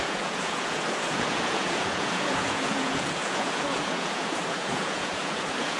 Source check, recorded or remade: remade